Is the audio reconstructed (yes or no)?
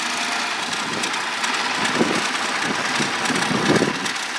no